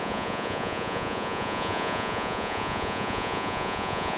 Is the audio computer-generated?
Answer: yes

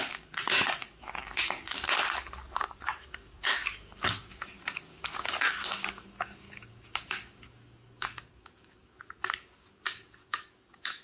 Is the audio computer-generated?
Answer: yes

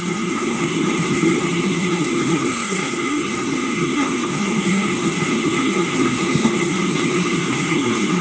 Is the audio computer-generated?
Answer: yes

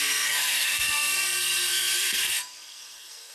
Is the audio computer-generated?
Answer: yes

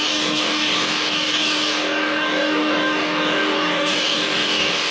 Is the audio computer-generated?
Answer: yes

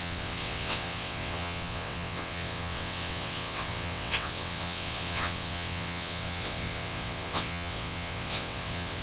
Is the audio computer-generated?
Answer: yes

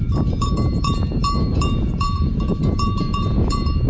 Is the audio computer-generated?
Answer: yes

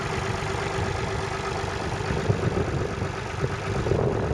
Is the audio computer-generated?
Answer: no